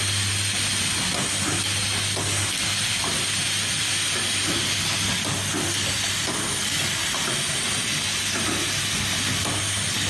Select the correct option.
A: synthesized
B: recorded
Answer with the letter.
B